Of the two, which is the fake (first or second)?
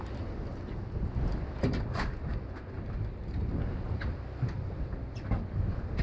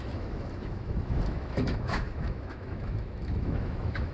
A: second